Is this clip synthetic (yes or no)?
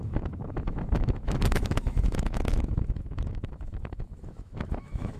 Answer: yes